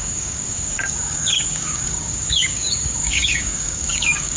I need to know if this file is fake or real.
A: fake